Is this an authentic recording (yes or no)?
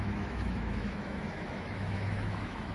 no